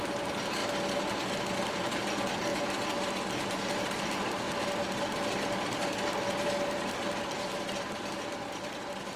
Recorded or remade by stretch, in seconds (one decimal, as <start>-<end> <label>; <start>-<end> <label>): 0.0-0.6 remade; 0.6-1.3 recorded; 1.3-2.5 remade; 2.5-6.3 recorded; 6.3-9.2 remade